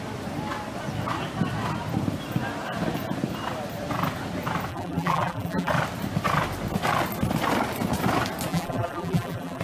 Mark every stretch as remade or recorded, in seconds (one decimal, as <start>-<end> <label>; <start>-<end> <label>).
0.0-4.7 recorded; 4.7-5.7 remade; 5.7-8.5 recorded; 8.5-9.6 remade